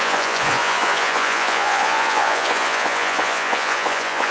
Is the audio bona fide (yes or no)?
no